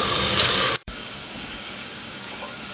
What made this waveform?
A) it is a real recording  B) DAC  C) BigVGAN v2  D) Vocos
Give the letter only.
B